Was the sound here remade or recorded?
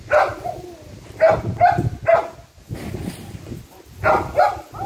recorded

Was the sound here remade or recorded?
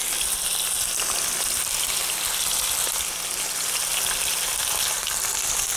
recorded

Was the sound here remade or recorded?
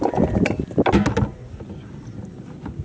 recorded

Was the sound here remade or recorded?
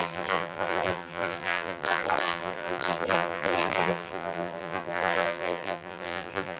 remade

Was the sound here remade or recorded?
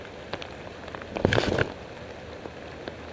recorded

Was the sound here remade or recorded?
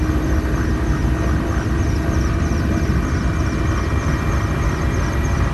recorded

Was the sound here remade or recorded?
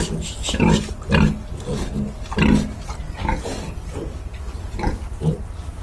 recorded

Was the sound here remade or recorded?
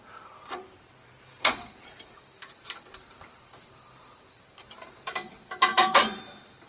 remade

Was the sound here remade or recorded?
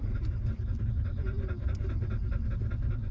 recorded